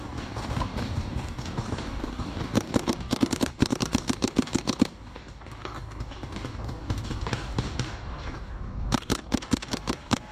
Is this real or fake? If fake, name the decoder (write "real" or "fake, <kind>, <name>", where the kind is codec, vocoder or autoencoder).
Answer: fake, codec, DAC